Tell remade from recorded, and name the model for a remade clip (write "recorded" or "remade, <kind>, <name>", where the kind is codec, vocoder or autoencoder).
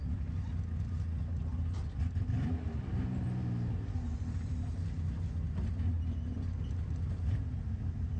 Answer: recorded